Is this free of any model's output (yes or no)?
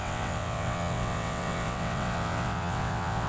no